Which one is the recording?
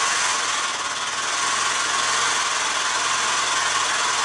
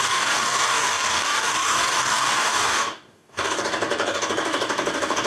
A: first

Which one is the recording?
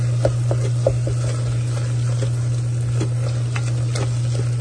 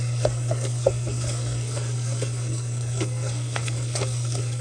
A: first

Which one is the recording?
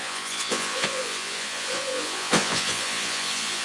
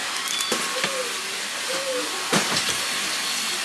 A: second